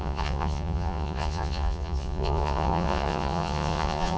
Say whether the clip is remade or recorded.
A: remade